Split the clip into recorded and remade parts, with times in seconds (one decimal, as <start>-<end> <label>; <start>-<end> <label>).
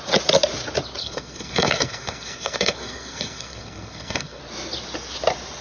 0.0-1.0 recorded; 1.0-4.4 remade; 4.4-5.6 recorded